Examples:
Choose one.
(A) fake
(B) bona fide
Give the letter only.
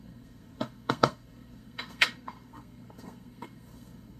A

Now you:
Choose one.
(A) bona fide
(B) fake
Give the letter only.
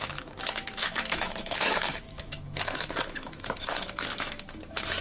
B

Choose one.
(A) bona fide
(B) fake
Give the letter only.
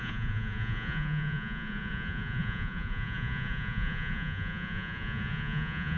B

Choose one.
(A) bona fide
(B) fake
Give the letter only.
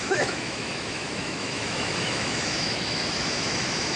B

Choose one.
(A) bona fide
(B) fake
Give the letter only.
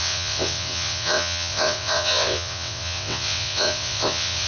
B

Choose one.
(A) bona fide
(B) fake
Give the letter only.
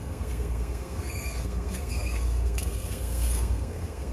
B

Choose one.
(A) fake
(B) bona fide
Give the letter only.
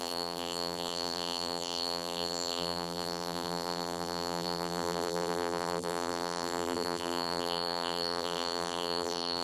A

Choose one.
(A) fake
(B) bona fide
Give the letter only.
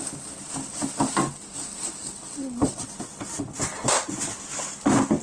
B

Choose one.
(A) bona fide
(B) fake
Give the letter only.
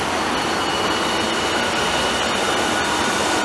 A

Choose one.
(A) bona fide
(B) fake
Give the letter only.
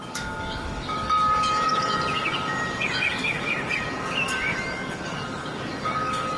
B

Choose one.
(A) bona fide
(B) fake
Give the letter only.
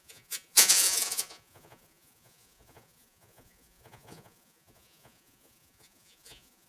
B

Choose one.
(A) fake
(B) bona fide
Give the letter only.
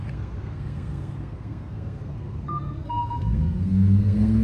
A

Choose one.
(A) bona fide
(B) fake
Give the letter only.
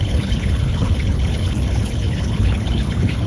B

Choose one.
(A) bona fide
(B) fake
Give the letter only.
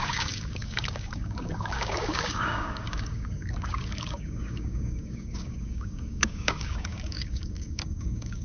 B